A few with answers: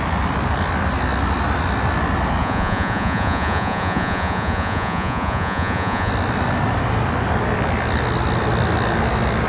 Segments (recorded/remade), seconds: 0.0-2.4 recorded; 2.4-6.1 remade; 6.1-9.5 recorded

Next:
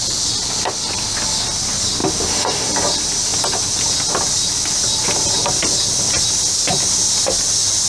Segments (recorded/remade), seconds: 0.0-7.9 recorded